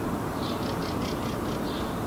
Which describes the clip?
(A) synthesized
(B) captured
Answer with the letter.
B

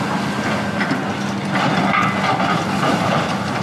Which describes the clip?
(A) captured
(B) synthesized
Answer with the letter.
A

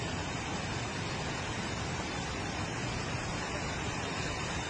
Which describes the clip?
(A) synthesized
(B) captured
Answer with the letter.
B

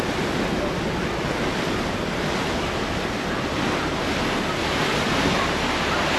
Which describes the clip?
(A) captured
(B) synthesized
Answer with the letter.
B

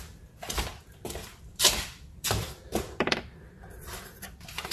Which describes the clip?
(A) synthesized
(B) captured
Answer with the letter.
A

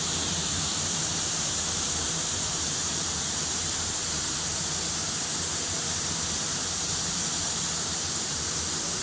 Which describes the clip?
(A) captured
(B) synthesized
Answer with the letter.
B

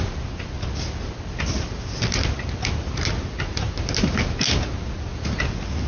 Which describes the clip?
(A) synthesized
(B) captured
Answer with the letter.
B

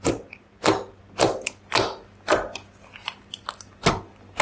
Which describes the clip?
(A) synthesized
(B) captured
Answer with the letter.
B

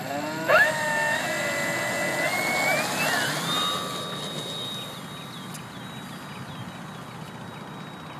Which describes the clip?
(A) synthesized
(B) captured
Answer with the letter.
B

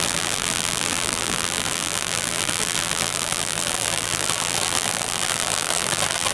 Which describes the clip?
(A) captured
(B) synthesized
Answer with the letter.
B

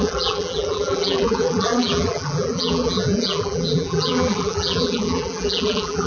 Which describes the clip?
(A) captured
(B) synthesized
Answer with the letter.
B